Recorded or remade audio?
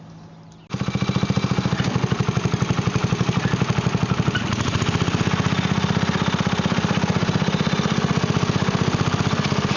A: recorded